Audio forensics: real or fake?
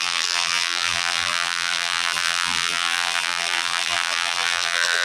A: fake